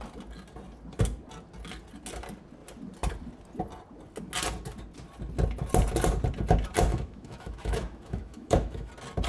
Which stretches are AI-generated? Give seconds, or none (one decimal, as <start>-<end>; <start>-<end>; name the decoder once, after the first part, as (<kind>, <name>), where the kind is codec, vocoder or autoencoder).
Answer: 6.9-8.9 (autoencoder, DAC-VAE)